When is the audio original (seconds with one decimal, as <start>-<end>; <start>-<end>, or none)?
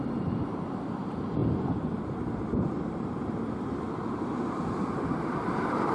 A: none